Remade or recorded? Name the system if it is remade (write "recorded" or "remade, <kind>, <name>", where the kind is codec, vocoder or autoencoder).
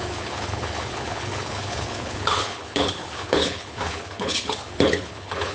remade, codec, HILCodec